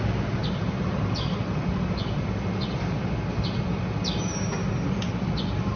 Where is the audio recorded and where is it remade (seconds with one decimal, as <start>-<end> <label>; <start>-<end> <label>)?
0.0-5.8 recorded